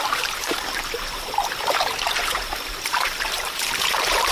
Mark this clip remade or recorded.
remade